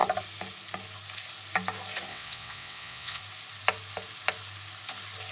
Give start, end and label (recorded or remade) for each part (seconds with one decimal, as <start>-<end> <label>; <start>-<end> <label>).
0.0-2.1 recorded; 2.1-3.2 remade; 3.2-5.3 recorded